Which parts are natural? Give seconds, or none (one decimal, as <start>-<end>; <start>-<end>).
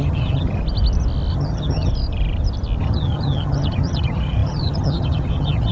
0.6-1.3; 1.9-2.8